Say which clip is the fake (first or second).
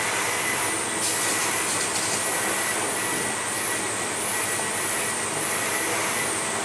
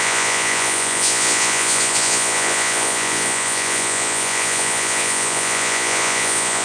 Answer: second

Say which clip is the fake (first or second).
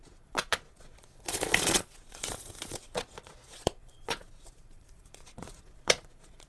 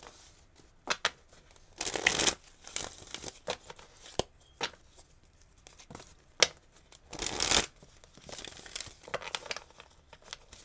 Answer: first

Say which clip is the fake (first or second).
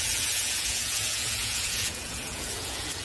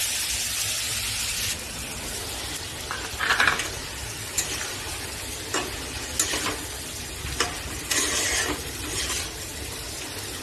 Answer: first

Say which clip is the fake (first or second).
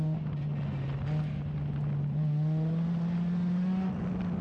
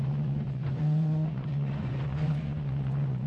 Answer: second